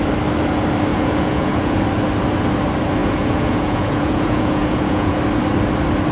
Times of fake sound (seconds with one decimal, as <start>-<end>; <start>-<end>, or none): 0.9-1.8; 3.0-5.2